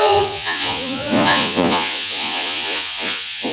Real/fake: fake